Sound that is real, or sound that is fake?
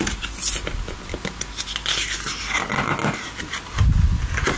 real